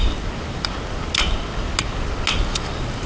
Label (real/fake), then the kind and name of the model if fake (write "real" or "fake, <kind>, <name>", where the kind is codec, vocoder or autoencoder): real